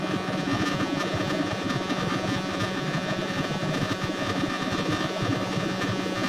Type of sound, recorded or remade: remade